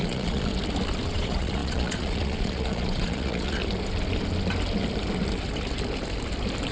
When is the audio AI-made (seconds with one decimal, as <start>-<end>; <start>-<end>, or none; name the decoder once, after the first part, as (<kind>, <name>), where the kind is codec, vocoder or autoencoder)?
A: 0.0-0.5 (vocoder, Vocos); 1.1-3.6

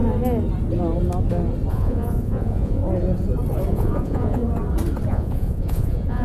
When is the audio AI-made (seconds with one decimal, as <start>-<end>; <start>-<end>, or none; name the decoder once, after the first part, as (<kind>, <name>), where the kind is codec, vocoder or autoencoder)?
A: 1.7-2.8 (vocoder, Vocos); 3.7-4.4; 5.1-6.2

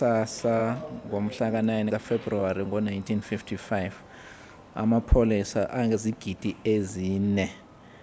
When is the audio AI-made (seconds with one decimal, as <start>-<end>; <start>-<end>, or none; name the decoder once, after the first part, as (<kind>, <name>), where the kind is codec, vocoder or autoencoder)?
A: none

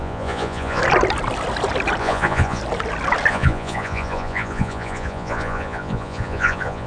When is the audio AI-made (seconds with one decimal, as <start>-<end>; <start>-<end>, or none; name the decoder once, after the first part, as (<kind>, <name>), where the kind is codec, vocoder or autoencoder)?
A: 0.0-0.8 (vocoder, Vocos); 2.0-2.6; 3.3-6.9

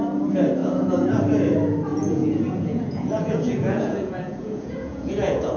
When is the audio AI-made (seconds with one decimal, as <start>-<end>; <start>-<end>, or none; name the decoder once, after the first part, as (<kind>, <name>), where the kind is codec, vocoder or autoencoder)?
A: 1.9-5.6 (vocoder, Vocos)

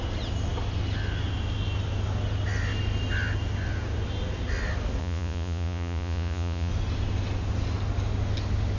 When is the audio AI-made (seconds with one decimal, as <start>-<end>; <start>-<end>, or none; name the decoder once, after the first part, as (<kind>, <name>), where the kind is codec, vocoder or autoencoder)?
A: 5.0-6.7 (vocoder, Vocos)

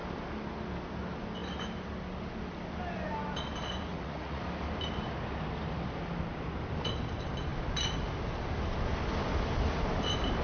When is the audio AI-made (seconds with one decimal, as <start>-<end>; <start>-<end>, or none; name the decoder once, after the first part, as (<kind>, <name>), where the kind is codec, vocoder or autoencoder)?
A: 3.9-4.4 (vocoder, Vocos)